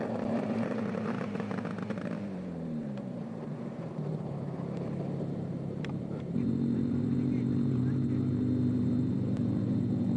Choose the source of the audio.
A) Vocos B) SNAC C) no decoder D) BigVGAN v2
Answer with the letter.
D